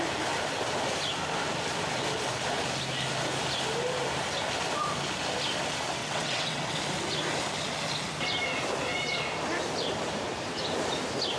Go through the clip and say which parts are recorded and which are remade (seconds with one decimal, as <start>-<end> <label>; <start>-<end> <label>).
0.0-6.0 recorded; 6.0-6.8 remade; 6.8-11.4 recorded